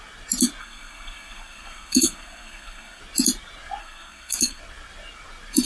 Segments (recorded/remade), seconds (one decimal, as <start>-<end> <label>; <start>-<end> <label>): 0.0-0.6 recorded; 0.6-3.0 remade; 3.0-3.8 recorded; 3.8-4.6 remade; 4.6-5.7 recorded